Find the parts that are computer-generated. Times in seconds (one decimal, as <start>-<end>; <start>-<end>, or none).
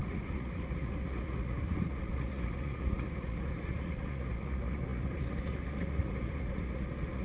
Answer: 0.0-7.2